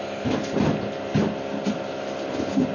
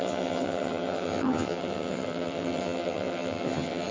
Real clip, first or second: first